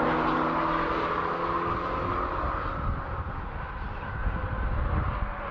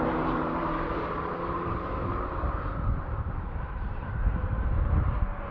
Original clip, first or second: first